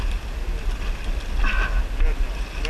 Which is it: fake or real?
real